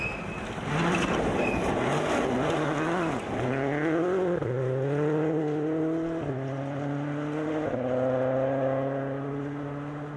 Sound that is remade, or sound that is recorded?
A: recorded